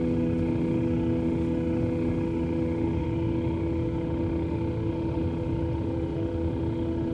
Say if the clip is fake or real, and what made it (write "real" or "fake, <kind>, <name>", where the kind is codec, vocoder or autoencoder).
fake, autoencoder, DAC-VAE